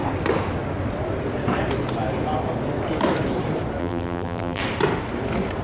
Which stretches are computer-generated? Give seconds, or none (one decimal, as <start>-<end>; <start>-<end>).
3.8-4.6